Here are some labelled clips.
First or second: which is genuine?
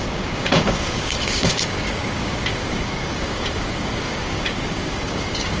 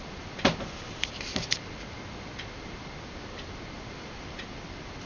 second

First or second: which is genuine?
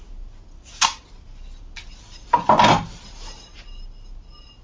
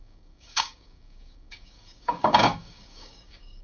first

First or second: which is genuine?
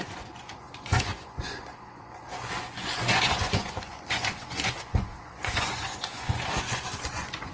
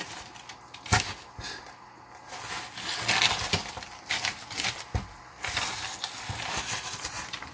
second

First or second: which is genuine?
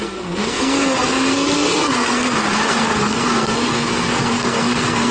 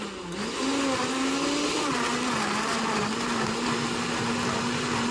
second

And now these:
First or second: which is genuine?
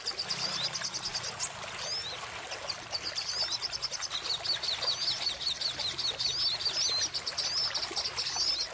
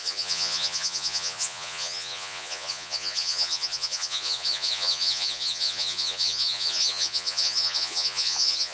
first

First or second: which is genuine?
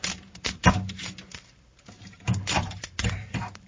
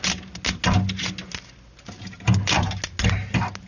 second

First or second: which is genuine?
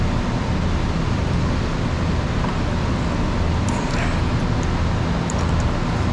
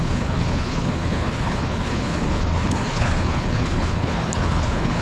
first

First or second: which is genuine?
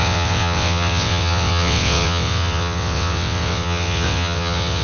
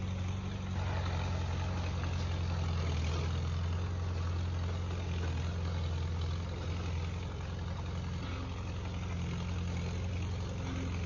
second